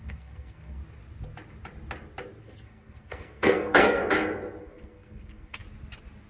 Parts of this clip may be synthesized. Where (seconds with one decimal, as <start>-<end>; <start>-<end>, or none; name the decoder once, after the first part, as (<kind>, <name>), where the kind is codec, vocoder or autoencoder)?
0.0-0.8 (codec, SNAC); 2.4-4.0; 4.6-5.6